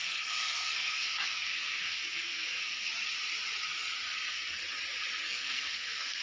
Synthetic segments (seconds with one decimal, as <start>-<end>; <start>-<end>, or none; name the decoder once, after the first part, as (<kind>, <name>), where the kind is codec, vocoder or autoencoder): 0.0-2.9 (codec, SNAC); 4.1-4.6; 5.2-6.2